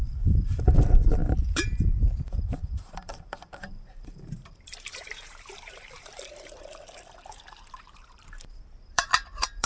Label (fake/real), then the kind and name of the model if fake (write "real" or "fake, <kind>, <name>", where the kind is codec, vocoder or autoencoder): fake, vocoder, BigVGAN v2